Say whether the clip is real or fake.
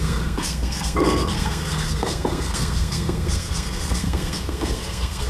fake